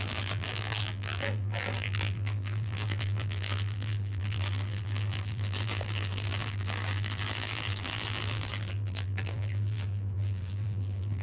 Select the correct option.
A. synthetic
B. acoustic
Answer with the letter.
A